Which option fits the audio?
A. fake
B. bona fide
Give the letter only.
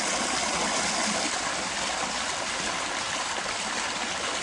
B